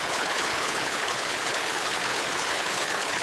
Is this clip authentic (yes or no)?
no